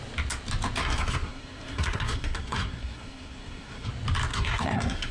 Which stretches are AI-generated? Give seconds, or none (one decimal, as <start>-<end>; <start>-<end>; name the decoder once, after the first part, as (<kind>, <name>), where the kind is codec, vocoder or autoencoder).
0.8-3.9 (codec, SNAC); 4.3-5.1